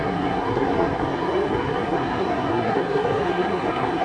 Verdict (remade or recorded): remade